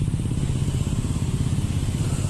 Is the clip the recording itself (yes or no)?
yes